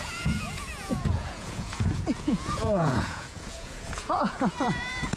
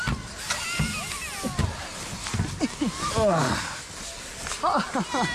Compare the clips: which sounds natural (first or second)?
second